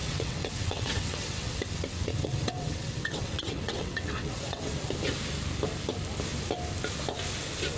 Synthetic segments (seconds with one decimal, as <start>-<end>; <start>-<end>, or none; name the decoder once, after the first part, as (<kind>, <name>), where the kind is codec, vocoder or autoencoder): 0.0-4.7 (vocoder, WaveNeXt)